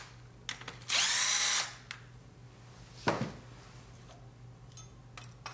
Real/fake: real